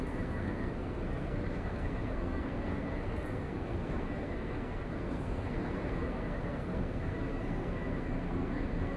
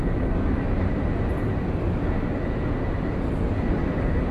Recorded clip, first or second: second